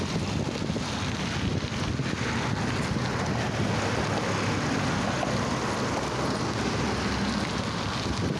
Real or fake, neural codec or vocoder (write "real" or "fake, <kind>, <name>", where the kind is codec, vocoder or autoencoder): real